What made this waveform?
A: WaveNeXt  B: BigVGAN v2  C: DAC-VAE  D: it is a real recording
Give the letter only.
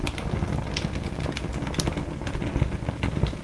D